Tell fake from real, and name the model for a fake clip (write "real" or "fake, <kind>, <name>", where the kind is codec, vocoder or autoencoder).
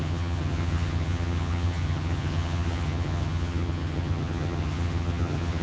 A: fake, vocoder, HiFi-GAN